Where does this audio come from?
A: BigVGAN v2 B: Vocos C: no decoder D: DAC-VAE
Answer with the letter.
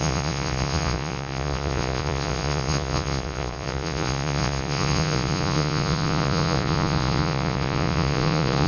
B